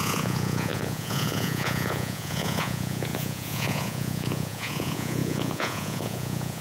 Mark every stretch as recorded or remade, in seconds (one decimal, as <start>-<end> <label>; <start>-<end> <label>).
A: 0.0-6.6 remade